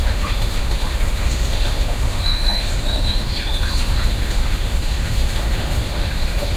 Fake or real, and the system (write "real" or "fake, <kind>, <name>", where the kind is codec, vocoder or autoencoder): fake, autoencoder, DAC-VAE